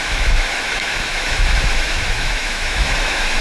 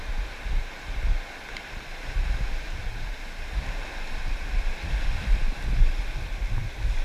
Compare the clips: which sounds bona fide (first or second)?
second